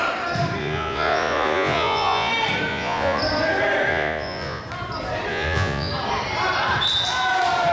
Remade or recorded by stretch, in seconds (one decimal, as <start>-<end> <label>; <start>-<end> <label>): 0.0-0.6 recorded; 0.6-2.3 remade; 2.3-2.7 recorded; 2.7-3.2 remade; 3.2-3.9 recorded; 3.9-4.6 remade; 4.6-5.3 recorded; 5.3-5.9 remade; 5.9-7.7 recorded